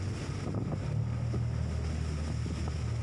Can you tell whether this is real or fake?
real